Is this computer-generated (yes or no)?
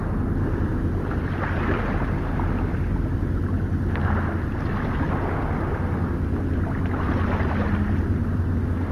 no